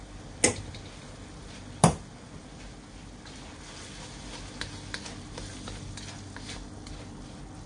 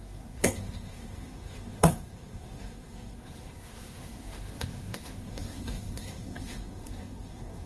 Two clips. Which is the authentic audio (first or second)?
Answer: first